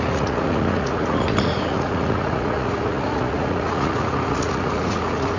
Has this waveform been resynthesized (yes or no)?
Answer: yes